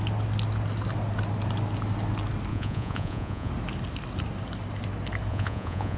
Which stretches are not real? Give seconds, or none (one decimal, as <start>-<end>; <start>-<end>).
2.5-3.5; 5.3-6.0